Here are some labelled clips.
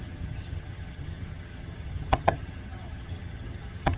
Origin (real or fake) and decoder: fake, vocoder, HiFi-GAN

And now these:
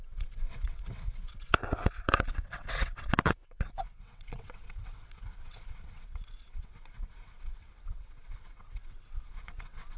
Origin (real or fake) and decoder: fake, vocoder, WaveNeXt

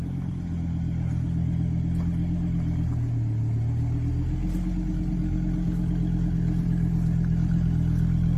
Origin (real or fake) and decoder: real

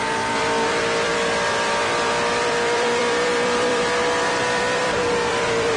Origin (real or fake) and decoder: fake, vocoder, BigVGAN v2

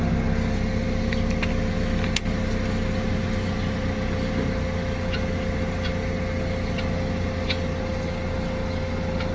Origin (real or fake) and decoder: real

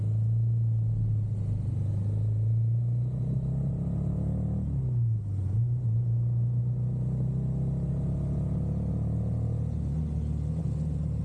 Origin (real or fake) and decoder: real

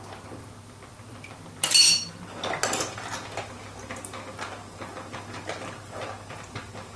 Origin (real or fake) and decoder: real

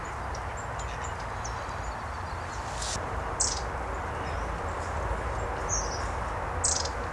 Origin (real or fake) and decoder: real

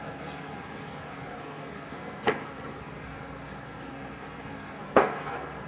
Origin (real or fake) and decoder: fake, codec, SNAC